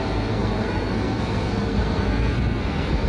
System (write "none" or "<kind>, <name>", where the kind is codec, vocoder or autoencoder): codec, SNAC